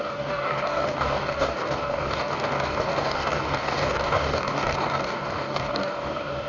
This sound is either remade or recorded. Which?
remade